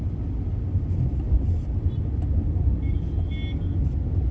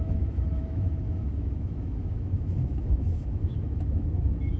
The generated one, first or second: second